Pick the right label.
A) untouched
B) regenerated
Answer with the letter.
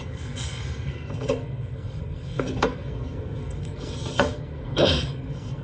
B